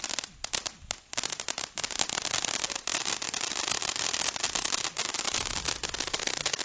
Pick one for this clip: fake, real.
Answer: real